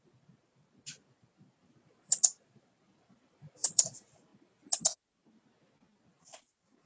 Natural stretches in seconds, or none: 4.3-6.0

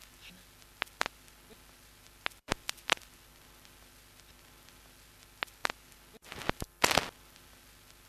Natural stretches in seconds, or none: 0.0-8.1